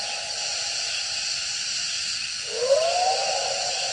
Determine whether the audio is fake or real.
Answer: real